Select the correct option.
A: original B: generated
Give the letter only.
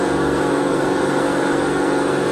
B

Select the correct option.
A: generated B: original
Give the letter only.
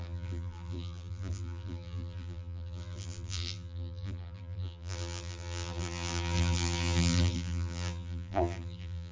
A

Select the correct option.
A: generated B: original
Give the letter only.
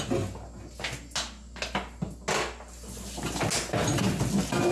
B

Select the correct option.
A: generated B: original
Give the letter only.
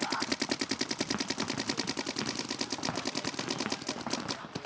B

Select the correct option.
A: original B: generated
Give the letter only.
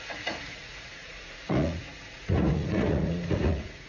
B